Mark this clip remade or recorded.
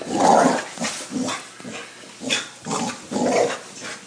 recorded